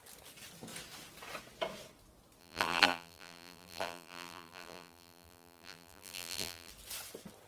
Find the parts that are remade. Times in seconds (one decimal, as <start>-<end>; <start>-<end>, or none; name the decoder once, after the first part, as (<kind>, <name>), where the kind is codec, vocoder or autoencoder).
2.4-6.7 (vocoder, BigVGAN v2)